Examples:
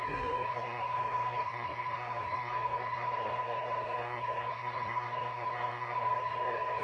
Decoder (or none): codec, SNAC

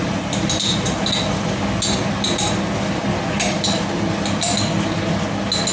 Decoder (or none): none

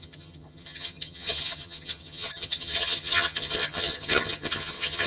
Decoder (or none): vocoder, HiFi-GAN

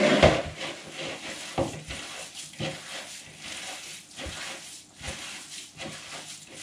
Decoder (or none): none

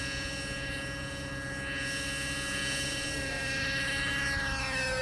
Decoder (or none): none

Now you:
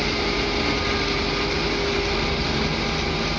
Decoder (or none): none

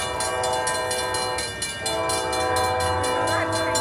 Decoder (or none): none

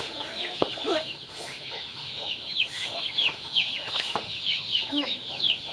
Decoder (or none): autoencoder, DAC-VAE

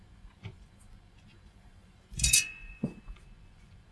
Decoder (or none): vocoder, Vocos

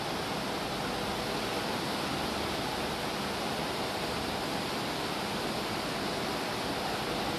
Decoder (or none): none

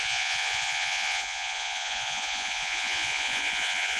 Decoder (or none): vocoder, Vocos